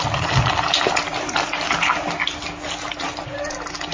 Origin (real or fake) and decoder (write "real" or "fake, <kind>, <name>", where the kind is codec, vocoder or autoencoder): real